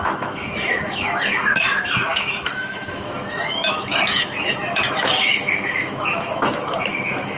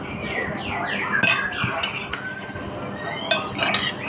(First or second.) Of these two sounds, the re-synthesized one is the first